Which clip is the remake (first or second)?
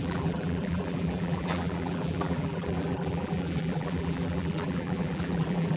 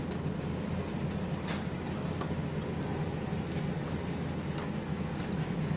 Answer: first